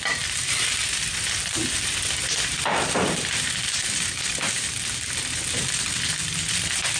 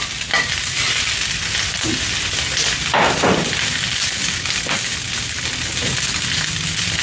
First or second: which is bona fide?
second